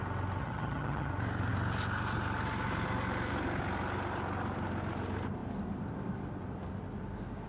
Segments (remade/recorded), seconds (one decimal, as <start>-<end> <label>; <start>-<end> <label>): 0.0-0.4 recorded; 0.4-1.1 remade; 1.1-7.5 recorded